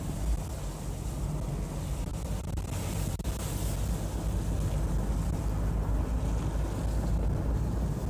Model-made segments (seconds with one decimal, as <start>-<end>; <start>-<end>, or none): none